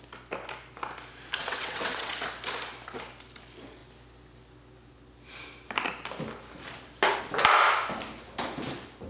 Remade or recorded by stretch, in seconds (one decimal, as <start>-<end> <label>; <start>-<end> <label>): 0.0-1.4 recorded; 1.4-2.1 remade; 2.1-9.1 recorded